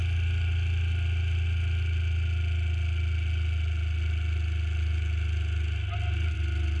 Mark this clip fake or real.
real